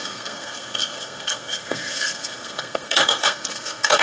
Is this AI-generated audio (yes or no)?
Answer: yes